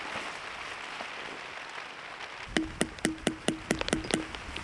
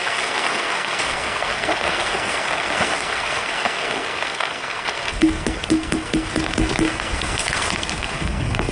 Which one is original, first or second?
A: first